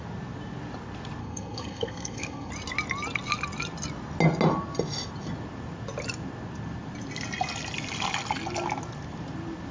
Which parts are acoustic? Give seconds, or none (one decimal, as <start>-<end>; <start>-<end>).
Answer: 0.0-1.2; 2.5-9.7